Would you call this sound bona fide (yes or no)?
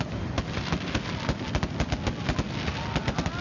yes